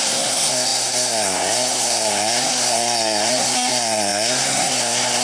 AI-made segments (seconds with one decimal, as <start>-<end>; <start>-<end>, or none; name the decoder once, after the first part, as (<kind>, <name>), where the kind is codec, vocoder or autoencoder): 0.0-5.2 (codec, SNAC)